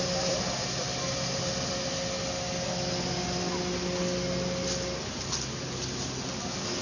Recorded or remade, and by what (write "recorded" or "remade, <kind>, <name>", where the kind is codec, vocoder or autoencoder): recorded